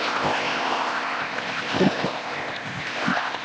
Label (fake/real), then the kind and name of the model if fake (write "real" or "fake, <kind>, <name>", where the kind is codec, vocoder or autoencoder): fake, codec, ZipCodec